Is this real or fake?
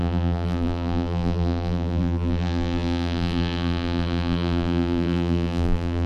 fake